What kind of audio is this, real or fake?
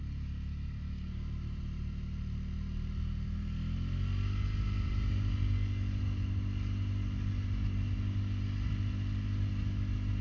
real